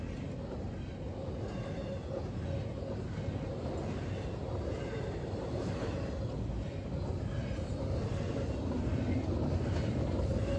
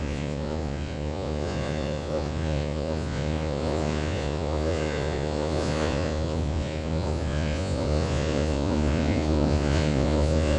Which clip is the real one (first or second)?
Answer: first